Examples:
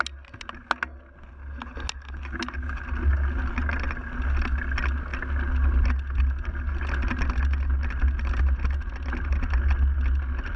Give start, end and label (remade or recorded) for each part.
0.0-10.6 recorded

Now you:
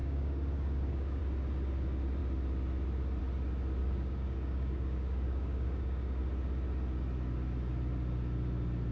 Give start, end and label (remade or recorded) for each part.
0.0-1.2 remade; 1.2-3.8 recorded; 3.8-6.2 remade; 6.2-8.9 recorded

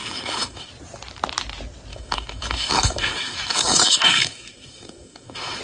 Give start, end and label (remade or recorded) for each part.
0.0-0.7 remade; 0.7-1.9 recorded; 1.9-5.6 remade

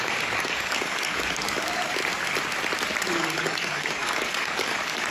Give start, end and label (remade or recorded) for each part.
0.0-2.0 remade; 2.0-3.0 recorded; 3.0-5.1 remade

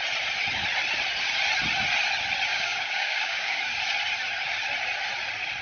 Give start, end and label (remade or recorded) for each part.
0.0-2.5 recorded; 2.5-3.6 remade; 3.6-5.6 recorded

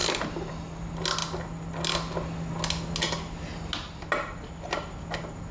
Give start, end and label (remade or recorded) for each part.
0.0-5.5 recorded

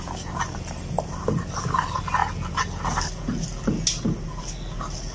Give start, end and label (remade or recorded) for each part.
0.0-5.1 recorded

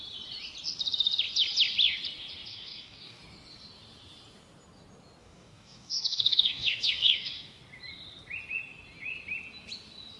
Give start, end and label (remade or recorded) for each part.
0.0-2.5 recorded; 2.5-3.2 remade; 3.2-5.2 recorded; 5.2-7.6 remade; 7.6-10.2 recorded